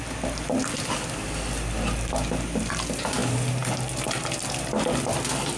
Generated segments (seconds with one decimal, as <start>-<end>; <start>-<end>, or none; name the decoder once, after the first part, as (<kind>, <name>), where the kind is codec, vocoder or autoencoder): none